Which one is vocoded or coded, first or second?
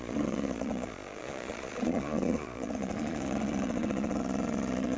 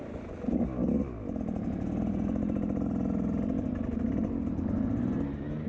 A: first